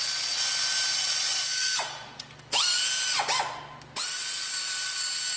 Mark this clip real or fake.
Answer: real